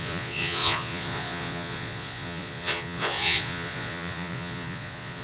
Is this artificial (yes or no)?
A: yes